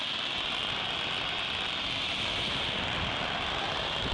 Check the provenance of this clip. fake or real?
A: real